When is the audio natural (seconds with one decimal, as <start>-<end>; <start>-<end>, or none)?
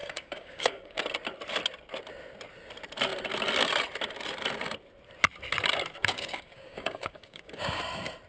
1.0-6.0; 7.8-8.3